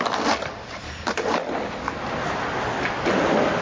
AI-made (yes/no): no